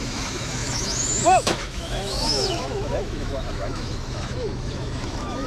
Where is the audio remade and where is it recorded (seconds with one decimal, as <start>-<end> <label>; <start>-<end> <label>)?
0.0-5.5 remade